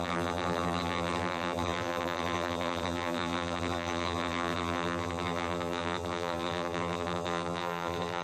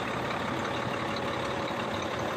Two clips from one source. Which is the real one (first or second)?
second